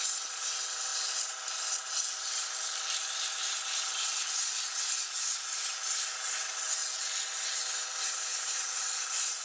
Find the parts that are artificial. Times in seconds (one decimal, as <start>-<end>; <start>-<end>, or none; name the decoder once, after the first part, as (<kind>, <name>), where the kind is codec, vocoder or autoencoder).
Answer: none